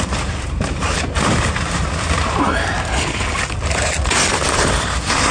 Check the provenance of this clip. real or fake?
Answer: fake